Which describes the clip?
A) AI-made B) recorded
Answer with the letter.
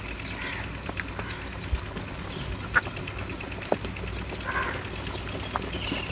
B